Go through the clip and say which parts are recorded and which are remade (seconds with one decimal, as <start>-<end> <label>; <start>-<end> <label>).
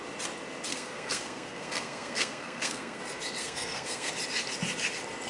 0.0-0.7 recorded; 0.7-3.0 remade; 3.0-3.4 recorded; 3.4-4.1 remade; 4.1-5.3 recorded